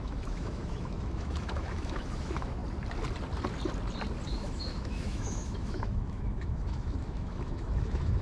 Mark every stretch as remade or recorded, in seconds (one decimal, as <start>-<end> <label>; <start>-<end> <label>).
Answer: 0.0-2.6 remade; 2.6-4.3 recorded; 4.3-8.2 remade